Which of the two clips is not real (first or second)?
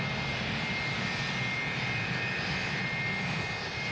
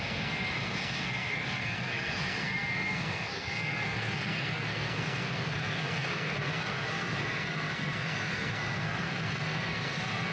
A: second